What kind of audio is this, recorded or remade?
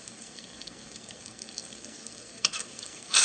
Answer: remade